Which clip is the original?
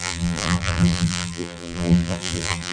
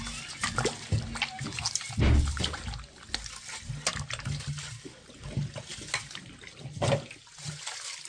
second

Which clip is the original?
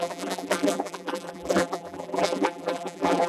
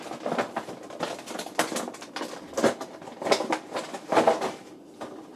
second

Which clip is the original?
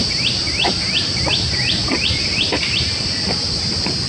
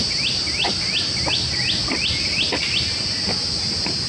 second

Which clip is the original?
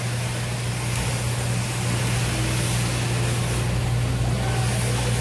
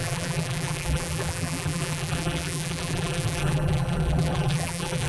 first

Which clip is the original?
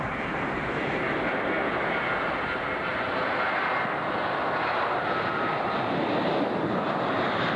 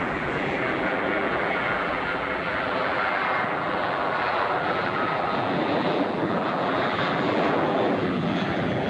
first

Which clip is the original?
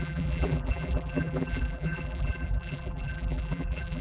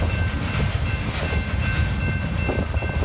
second